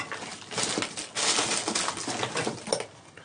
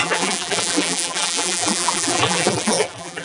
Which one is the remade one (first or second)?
second